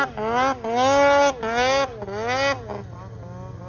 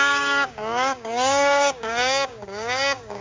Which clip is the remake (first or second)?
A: second